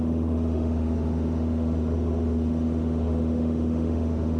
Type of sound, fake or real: fake